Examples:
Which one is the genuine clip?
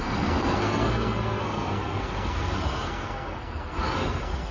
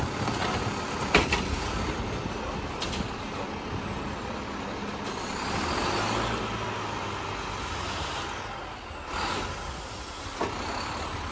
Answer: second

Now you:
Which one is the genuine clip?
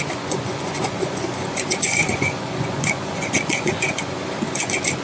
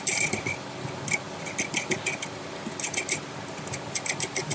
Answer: second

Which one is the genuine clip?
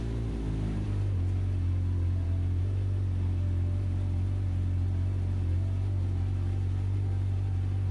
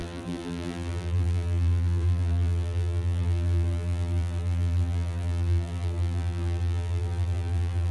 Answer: first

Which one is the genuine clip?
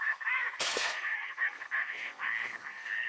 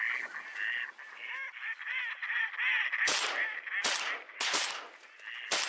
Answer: second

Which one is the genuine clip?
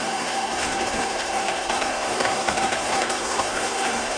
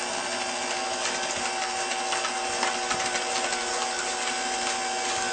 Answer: second